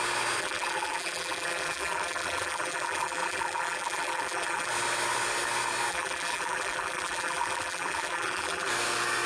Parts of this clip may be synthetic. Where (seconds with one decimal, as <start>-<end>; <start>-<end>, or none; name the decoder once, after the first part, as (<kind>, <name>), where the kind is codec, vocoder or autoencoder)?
0.4-4.7 (vocoder, BigVGAN v2); 5.9-8.7